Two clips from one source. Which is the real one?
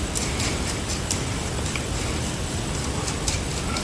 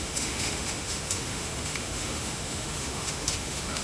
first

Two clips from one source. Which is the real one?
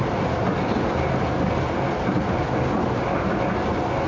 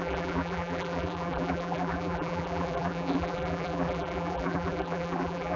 first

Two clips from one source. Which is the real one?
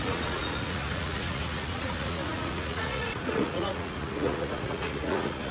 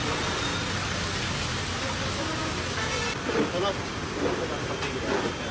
second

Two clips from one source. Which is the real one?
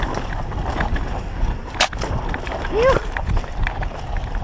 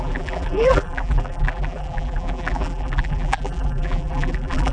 first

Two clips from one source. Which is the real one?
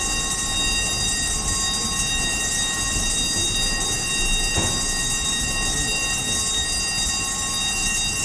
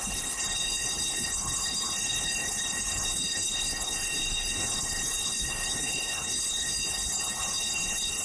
first